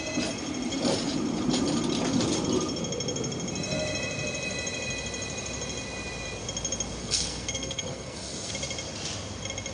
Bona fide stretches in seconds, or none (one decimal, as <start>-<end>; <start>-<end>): 0.0-7.0; 8.5-9.7